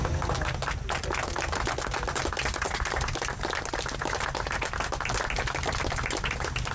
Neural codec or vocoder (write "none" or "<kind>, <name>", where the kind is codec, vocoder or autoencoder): none